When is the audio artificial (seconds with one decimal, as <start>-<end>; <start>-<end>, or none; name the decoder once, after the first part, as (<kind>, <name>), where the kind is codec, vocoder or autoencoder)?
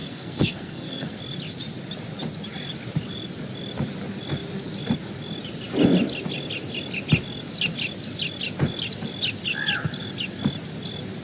0.0-1.2 (codec, SNAC)